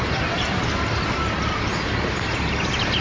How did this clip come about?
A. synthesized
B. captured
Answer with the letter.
B